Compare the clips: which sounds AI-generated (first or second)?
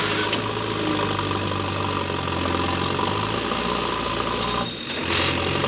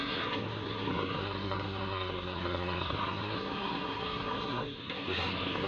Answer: second